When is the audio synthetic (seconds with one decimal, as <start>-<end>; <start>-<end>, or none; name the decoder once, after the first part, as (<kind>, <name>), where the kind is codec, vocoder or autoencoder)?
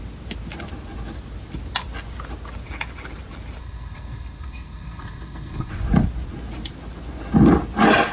3.6-5.7 (codec, SNAC)